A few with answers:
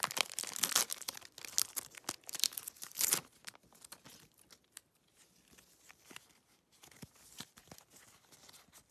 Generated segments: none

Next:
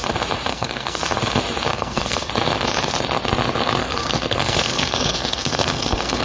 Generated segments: 0.5-1.0 (codec, SNAC); 1.7-2.3; 3.8-6.2

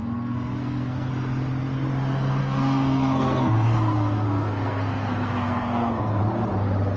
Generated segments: 0.0-1.1 (codec, SNAC); 2.4-6.2

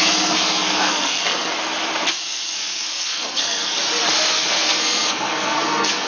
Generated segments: 0.0-1.5 (codec, SNAC); 2.1-3.8; 4.3-6.1

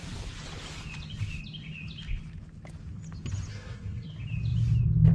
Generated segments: 3.5-4.1 (codec, SNAC)

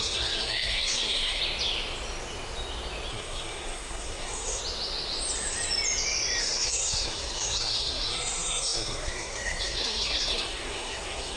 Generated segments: 0.0-1.4 (codec, SNAC); 3.1-4.6; 6.4-11.4

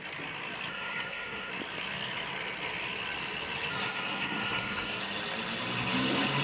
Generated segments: 0.7-1.5 (codec, SNAC); 3.7-5.0

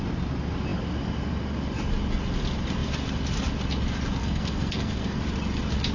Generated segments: 4.2-5.2 (codec, SNAC)